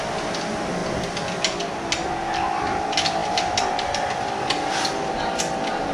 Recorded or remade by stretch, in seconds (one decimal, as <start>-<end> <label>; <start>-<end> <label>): 0.0-5.9 recorded